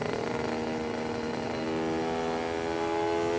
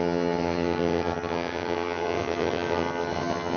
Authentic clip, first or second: first